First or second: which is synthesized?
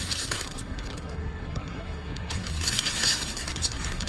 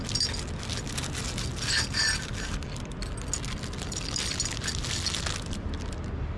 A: first